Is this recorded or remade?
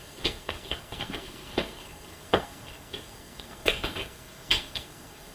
remade